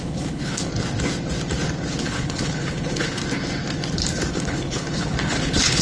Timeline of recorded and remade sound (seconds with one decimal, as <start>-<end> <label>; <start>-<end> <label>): 0.0-0.7 remade; 0.7-2.0 recorded; 2.0-3.2 remade; 3.2-4.3 recorded; 4.3-5.8 remade